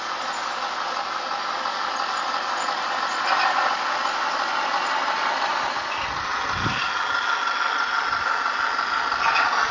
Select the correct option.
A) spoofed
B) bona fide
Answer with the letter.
B